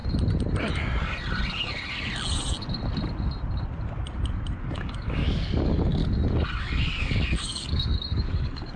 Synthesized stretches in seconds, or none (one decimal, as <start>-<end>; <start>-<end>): 4.6-6.0; 6.6-8.8